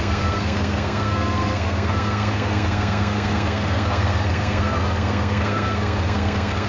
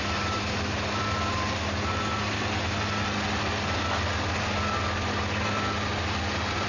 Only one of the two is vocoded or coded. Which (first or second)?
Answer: first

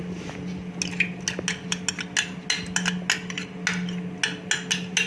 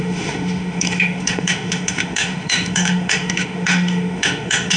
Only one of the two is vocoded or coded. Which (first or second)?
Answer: second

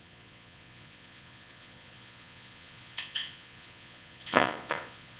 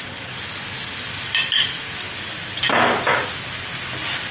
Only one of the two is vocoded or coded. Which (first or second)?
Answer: first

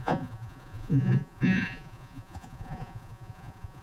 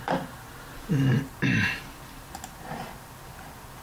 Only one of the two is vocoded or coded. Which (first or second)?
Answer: first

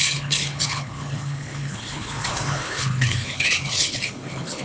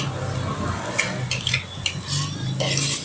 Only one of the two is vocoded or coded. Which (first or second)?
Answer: first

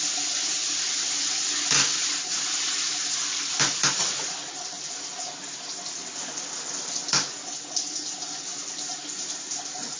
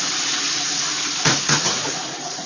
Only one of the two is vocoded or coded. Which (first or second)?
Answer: second